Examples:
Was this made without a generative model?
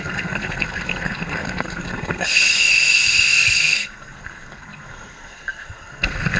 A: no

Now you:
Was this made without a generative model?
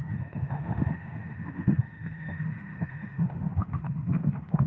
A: no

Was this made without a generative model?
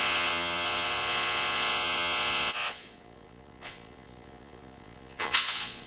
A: no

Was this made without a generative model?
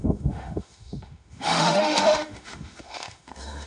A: no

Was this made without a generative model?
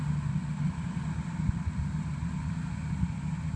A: yes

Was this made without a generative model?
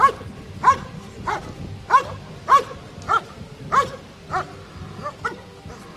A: yes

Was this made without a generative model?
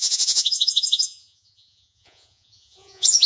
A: no